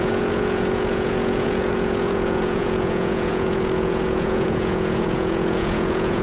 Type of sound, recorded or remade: remade